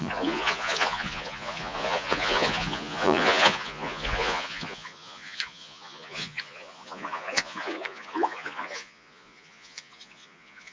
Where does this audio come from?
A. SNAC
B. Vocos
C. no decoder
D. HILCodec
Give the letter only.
B